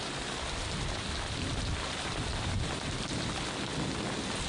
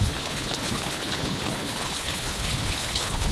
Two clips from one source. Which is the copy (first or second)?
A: second